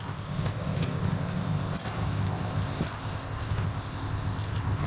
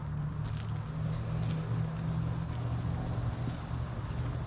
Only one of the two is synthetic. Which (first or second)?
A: first